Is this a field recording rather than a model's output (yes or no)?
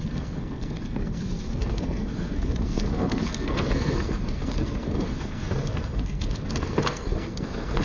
no